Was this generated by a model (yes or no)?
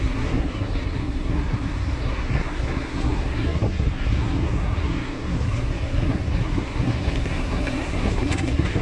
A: yes